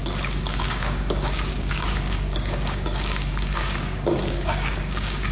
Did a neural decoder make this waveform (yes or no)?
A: yes